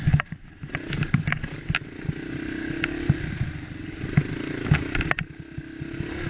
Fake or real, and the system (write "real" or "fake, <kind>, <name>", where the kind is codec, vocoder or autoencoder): real